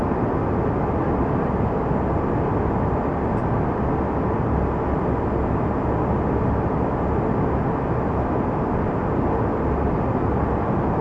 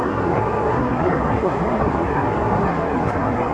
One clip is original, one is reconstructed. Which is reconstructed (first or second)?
second